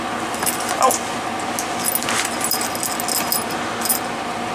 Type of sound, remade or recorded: recorded